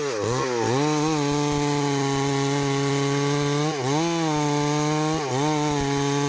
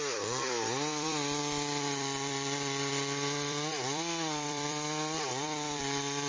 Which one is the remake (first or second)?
second